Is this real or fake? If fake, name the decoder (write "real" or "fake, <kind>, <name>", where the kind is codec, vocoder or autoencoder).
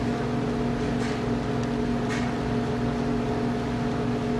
real